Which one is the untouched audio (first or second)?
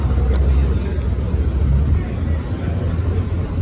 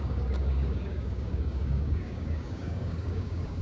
first